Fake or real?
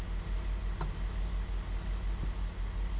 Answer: real